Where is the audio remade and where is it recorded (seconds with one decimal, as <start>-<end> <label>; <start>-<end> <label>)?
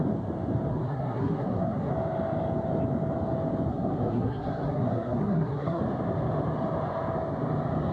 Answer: 0.0-0.7 recorded; 0.7-1.9 remade; 1.9-3.7 recorded; 3.7-5.8 remade; 5.8-7.9 recorded